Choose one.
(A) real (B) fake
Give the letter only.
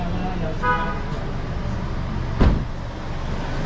A